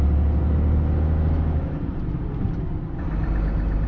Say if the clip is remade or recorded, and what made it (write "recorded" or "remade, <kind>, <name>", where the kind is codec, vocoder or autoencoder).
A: recorded